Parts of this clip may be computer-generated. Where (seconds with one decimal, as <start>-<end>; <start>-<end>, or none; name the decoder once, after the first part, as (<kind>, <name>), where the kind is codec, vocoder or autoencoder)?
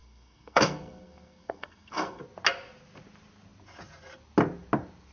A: 0.0-2.2 (codec, SNAC)